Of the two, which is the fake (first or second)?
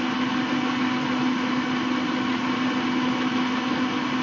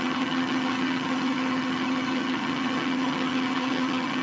second